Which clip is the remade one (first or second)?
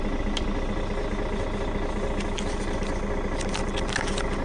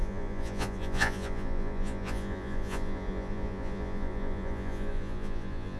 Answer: second